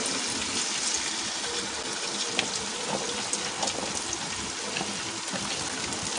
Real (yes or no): yes